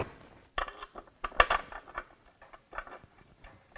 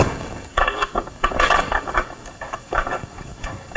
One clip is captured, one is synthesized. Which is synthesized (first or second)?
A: second